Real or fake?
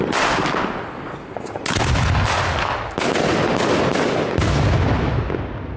real